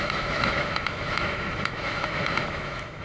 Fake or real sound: fake